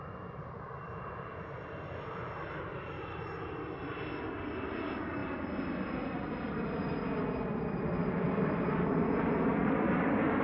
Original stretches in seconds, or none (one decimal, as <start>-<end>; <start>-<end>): 0.0-2.7; 3.8-5.2; 7.0-8.0